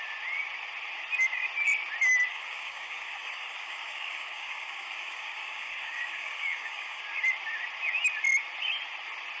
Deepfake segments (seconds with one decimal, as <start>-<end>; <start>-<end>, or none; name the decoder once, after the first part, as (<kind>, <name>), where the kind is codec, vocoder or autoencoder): 2.3-7.0 (codec, DAC)